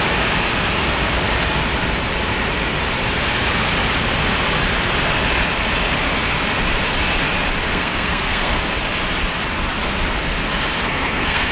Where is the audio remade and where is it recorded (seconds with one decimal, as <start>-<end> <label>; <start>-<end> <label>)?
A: 0.0-7.7 recorded; 7.7-8.6 remade; 8.6-10.8 recorded; 10.8-11.5 remade